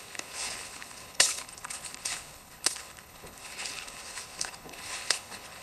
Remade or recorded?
remade